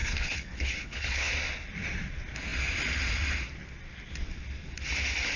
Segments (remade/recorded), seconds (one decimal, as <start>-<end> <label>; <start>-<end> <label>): 0.0-1.3 remade; 1.3-5.4 recorded